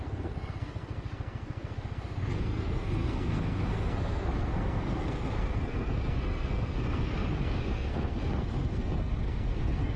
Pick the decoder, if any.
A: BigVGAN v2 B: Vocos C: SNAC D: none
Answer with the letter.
C